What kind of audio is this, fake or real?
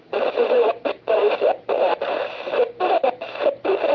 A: fake